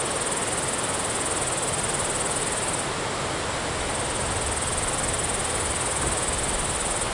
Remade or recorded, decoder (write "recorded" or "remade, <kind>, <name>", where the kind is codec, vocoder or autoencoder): recorded